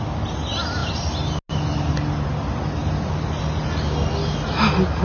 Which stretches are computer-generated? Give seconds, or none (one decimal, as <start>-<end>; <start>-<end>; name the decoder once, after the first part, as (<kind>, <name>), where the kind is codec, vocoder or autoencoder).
none